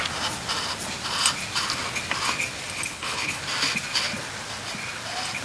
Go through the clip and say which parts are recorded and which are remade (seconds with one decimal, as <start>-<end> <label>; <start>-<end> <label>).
0.0-2.9 recorded; 2.9-3.4 remade; 3.4-5.4 recorded